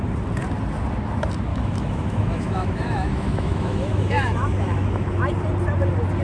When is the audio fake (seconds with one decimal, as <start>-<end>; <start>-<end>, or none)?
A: 1.5-5.2